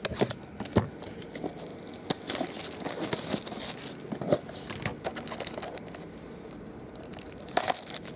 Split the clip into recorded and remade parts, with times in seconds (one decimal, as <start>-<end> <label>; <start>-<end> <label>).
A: 0.0-8.2 recorded